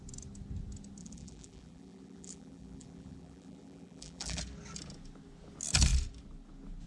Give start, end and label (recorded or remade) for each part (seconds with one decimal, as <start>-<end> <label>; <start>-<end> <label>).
0.0-1.0 recorded; 1.0-4.4 remade; 4.4-6.9 recorded